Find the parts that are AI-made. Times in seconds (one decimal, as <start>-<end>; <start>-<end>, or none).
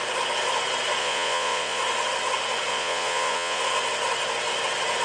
1.0-1.8; 2.7-3.6